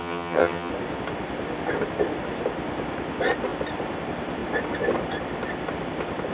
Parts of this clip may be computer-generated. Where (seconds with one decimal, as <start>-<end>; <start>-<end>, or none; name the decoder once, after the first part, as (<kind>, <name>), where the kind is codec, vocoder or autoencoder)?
0.0-0.7 (vocoder, HiFi-GAN)